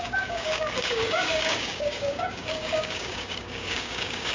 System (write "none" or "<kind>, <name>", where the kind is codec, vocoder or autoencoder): codec, DAC